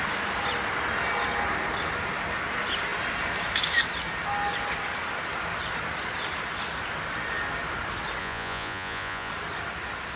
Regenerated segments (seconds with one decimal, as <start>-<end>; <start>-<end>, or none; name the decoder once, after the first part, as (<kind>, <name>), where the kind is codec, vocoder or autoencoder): 8.2-9.3 (vocoder, Vocos)